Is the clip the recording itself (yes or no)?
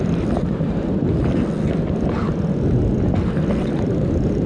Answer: yes